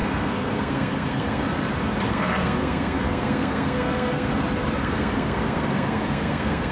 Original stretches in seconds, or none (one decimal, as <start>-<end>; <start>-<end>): 1.4-2.1; 4.3-4.8